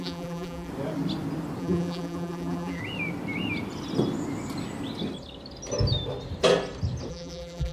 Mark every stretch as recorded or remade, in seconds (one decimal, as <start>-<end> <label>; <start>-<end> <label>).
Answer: 0.0-0.7 remade; 0.7-1.6 recorded; 1.6-2.8 remade; 2.8-7.1 recorded; 7.1-7.7 remade